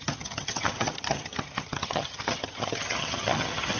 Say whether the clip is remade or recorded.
remade